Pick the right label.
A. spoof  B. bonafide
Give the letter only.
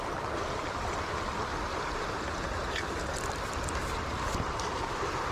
B